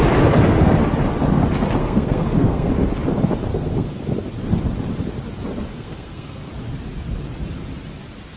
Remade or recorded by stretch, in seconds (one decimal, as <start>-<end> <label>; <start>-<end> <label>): 0.0-1.8 recorded; 1.8-2.7 remade; 2.7-3.5 recorded; 3.5-4.0 remade; 4.0-5.7 recorded; 5.7-6.5 remade; 6.5-8.4 recorded